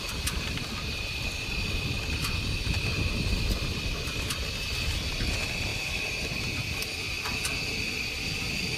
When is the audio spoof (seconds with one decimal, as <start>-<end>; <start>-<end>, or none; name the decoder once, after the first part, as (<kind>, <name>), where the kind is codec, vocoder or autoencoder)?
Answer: none